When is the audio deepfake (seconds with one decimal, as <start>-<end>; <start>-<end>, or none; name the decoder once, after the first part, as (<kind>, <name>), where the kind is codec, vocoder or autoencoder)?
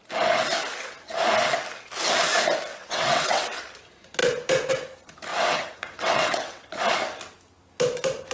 2.7-3.6 (vocoder, WaveNeXt); 5.3-6.8